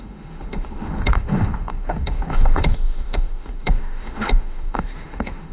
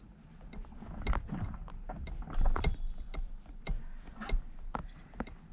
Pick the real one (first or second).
second